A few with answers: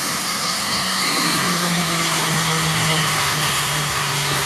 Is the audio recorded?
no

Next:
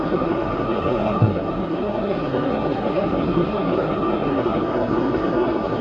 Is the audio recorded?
no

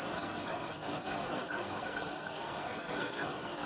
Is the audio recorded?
no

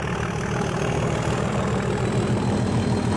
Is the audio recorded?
yes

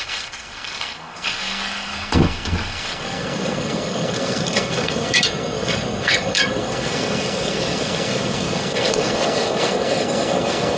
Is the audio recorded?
no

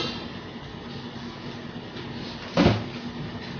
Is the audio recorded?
yes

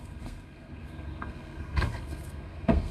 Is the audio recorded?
no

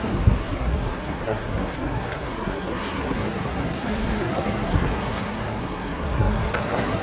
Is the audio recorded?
no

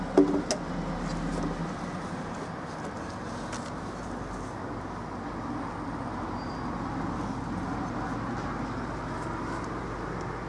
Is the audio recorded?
yes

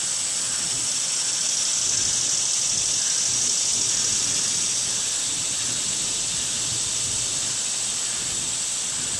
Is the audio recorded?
yes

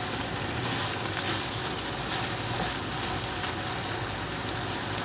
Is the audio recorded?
yes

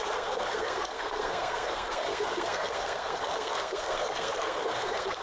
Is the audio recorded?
no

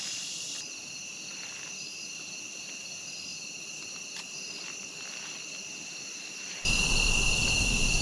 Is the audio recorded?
yes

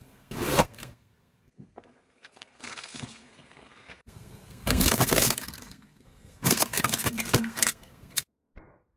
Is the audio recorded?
no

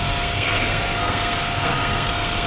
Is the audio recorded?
no